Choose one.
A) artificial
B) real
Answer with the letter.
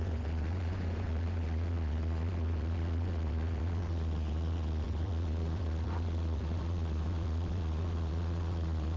A